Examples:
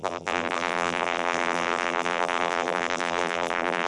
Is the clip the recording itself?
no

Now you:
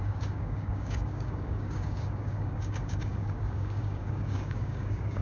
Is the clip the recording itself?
no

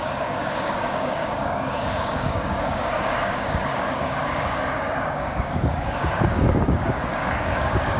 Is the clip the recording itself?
no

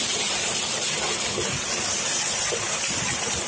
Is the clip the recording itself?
yes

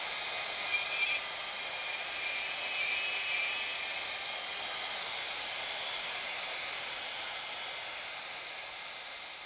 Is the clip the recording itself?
no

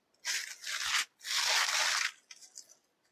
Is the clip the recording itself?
yes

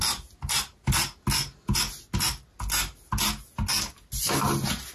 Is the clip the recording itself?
yes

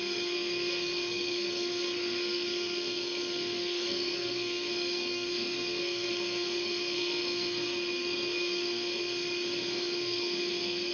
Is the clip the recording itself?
no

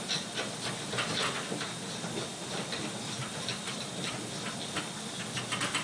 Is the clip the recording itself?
yes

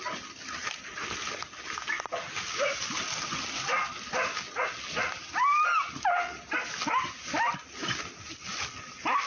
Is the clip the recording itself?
yes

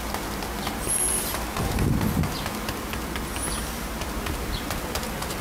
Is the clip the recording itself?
yes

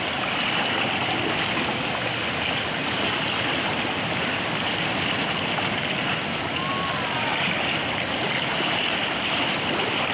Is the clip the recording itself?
yes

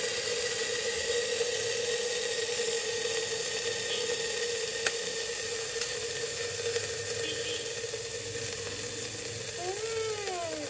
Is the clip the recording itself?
yes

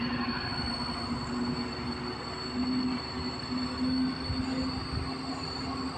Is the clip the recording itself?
yes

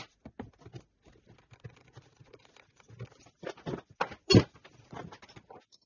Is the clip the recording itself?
yes